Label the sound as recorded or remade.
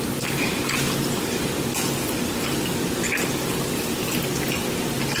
recorded